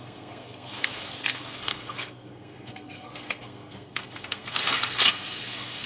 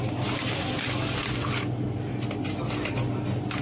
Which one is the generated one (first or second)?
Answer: first